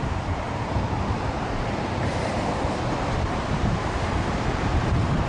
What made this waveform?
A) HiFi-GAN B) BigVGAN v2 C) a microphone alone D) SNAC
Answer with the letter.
B